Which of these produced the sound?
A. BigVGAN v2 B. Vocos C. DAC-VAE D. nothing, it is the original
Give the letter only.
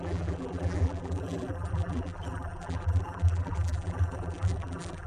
A